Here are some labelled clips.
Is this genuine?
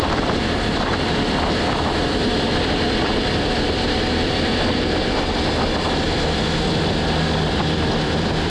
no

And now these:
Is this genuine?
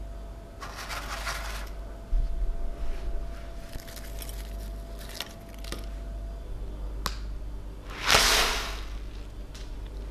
yes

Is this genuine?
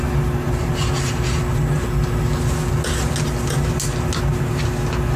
yes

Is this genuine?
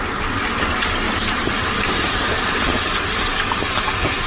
no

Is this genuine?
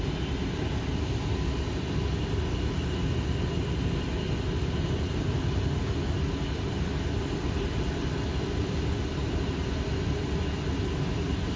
yes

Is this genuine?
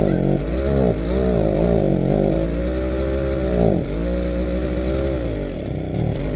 yes